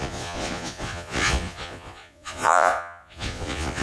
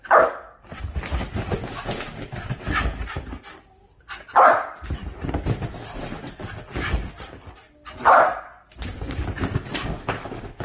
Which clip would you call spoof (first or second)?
first